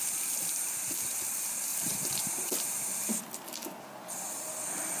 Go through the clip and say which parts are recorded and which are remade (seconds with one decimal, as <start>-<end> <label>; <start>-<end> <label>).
0.0-1.7 recorded; 1.7-2.5 remade; 2.5-5.0 recorded